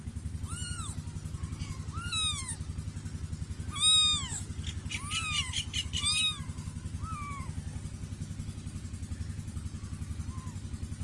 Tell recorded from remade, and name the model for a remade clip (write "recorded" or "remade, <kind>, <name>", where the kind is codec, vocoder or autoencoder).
recorded